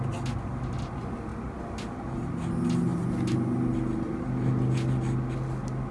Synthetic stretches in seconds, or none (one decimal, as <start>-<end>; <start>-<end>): none